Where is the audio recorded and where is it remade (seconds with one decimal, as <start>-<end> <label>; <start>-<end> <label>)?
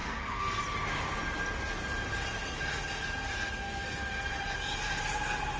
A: 0.0-0.6 remade; 0.6-3.6 recorded; 3.6-4.3 remade; 4.3-5.6 recorded